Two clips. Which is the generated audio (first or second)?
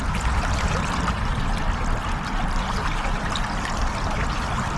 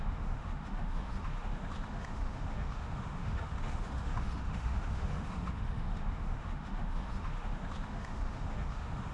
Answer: second